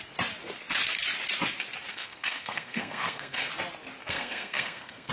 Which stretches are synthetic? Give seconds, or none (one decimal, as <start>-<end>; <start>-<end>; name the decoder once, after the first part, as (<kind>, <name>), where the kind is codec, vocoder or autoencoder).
1.9-3.5 (codec, SNAC); 4.0-5.1